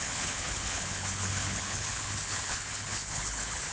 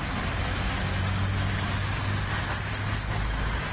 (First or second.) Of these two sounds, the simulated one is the first